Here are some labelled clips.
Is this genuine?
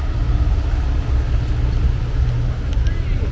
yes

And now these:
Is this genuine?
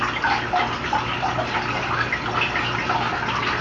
yes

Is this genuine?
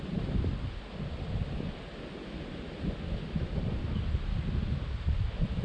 no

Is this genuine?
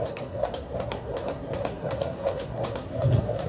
no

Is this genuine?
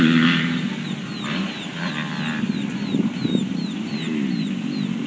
yes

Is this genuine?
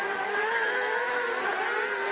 yes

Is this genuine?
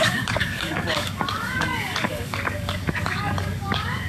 no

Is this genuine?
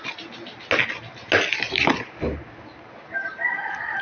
yes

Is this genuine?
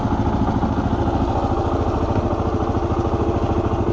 yes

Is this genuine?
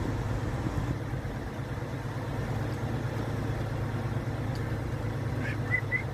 yes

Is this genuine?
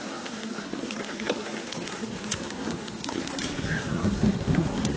no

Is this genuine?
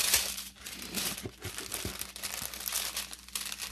yes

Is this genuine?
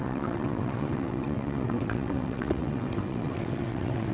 no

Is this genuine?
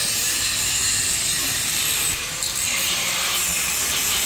no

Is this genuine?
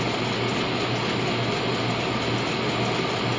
yes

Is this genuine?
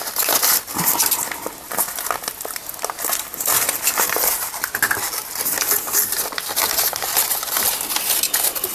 yes